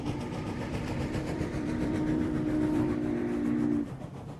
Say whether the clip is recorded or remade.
remade